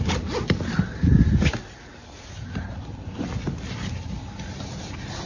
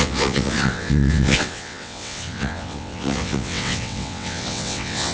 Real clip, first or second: first